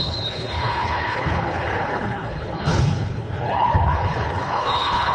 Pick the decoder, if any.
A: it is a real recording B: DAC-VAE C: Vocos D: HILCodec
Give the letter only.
D